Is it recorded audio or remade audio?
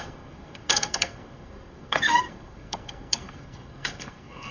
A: remade